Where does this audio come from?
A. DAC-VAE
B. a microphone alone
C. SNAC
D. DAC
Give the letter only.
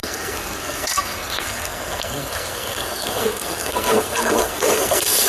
C